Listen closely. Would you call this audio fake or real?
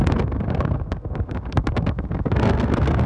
fake